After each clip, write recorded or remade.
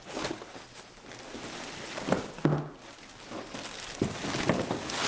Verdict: recorded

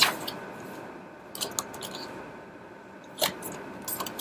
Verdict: recorded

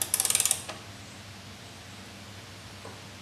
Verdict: recorded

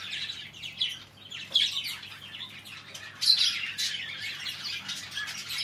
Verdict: recorded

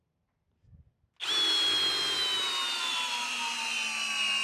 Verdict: recorded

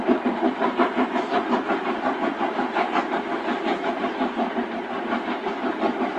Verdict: remade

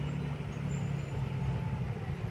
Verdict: recorded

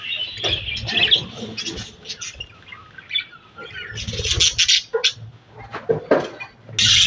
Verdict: recorded